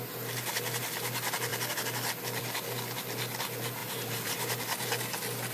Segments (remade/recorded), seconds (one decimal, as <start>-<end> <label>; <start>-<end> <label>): 0.0-3.8 recorded; 3.8-4.5 remade; 4.5-5.5 recorded